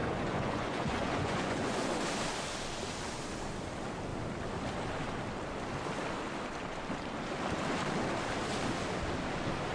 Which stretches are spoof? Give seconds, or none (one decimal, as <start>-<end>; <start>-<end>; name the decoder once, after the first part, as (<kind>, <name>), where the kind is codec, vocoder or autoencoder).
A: 0.0-2.0 (vocoder, Vocos)